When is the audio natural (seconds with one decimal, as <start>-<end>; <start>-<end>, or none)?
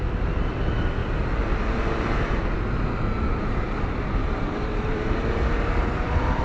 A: 0.0-4.2